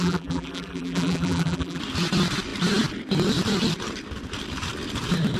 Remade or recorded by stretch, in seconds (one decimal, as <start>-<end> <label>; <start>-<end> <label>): 0.0-1.8 remade; 1.8-5.4 recorded